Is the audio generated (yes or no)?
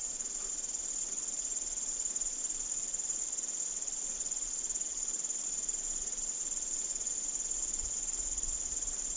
no